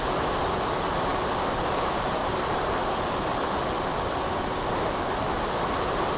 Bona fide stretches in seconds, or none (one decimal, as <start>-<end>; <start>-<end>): 0.0-1.1; 1.6-2.2; 4.5-6.2